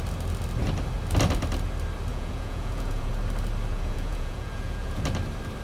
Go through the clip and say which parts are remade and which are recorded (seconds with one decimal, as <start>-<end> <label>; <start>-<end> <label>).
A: 0.0-2.1 recorded; 2.1-3.1 remade; 3.1-3.7 recorded; 3.7-5.0 remade; 5.0-5.6 recorded